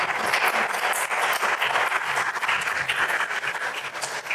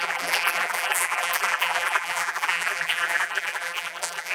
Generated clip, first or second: second